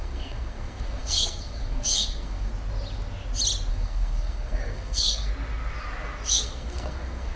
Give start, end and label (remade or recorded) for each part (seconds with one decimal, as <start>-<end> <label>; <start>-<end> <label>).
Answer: 0.0-2.5 remade; 2.5-3.7 recorded; 3.7-5.3 remade; 5.3-6.3 recorded; 6.3-7.4 remade